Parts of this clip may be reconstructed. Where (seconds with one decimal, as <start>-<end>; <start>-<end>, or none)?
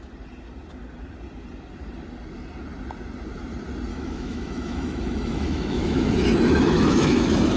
3.9-7.6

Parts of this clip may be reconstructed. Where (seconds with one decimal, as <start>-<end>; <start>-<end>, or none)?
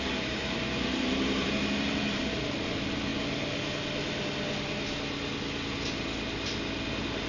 0.4-1.5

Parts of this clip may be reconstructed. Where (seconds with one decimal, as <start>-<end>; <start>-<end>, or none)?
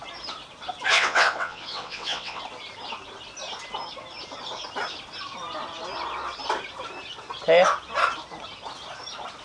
0.9-2.4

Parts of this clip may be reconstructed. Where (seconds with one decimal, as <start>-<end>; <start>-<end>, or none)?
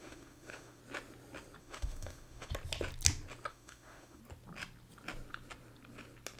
0.0-0.8; 1.6-2.5; 3.5-4.2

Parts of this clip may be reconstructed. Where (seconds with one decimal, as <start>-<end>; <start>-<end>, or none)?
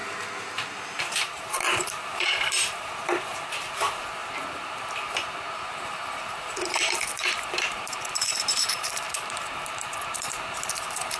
0.0-11.2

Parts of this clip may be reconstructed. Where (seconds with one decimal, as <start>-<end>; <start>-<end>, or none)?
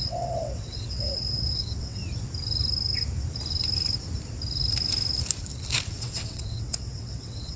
0.0-2.0; 6.0-7.6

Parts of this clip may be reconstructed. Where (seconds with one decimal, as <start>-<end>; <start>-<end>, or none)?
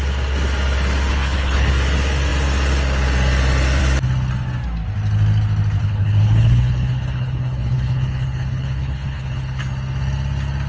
1.1-1.7; 5.8-9.6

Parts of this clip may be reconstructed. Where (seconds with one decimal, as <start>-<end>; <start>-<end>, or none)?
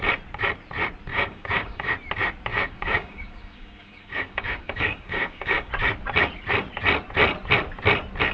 1.1-1.9; 2.5-5.7